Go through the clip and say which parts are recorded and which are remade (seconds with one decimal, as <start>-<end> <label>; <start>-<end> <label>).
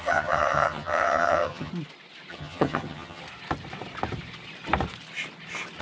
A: 0.0-1.7 remade; 1.7-2.3 recorded; 2.3-3.2 remade; 3.2-5.8 recorded